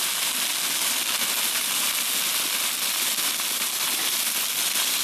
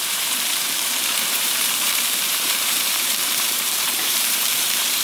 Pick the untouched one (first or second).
first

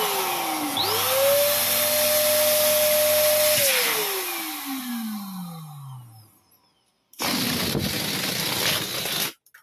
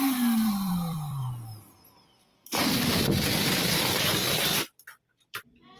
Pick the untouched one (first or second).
first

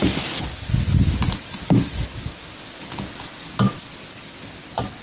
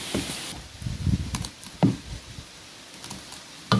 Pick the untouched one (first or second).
first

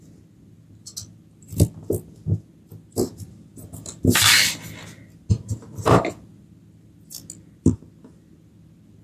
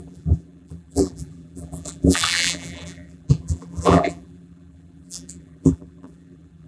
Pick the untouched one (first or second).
first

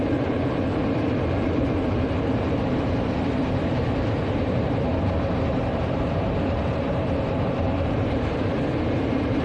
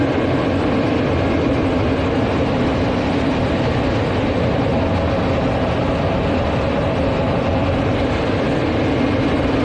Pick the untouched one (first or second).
second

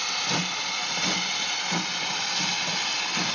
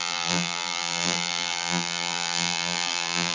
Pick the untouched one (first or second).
first